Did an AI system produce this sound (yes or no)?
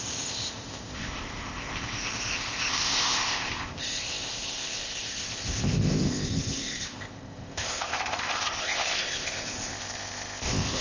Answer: yes